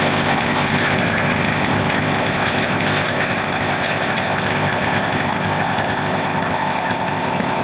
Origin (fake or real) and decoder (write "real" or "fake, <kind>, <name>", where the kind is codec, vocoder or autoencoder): fake, codec, ZipCodec